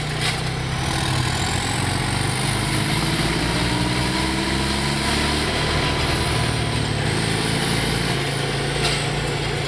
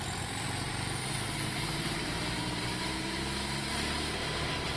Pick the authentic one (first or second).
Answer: first